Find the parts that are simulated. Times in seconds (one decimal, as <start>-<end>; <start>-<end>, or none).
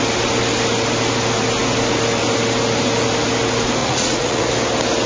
3.8-4.5